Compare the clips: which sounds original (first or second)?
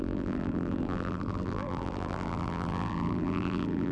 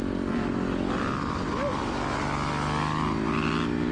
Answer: second